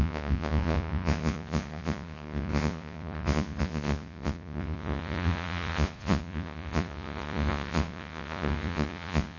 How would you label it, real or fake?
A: fake